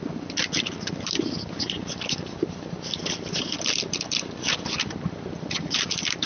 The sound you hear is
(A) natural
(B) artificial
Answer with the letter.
A